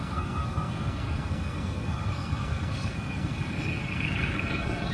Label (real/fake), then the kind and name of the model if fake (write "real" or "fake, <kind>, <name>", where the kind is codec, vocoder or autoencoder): fake, codec, SNAC